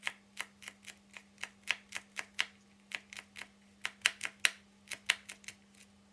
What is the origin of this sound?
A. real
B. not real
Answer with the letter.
A